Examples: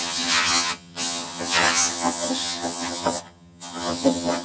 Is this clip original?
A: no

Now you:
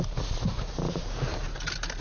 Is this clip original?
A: yes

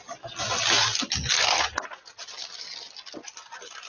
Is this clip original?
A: yes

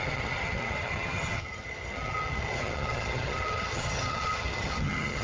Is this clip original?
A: no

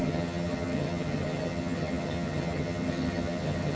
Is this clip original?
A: no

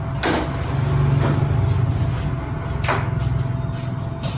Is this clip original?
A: yes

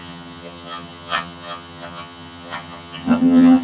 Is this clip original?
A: no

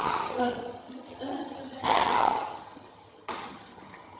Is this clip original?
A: no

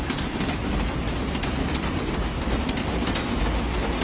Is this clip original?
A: yes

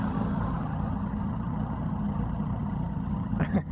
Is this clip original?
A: no